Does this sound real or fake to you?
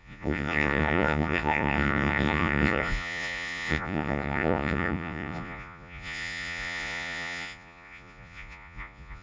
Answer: fake